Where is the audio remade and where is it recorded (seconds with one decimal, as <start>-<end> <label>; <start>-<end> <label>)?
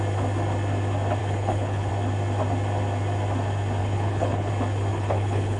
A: 0.0-1.2 recorded; 1.2-1.9 remade; 1.9-3.8 recorded; 3.8-4.5 remade; 4.5-4.9 recorded; 4.9-5.6 remade